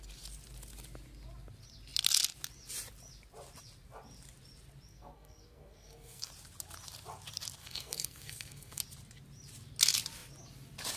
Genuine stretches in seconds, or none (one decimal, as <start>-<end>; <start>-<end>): 0.0-4.9; 6.3-7.6; 8.8-11.0